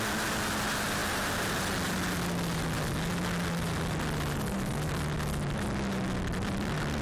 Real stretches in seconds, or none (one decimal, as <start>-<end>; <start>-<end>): 0.0-7.0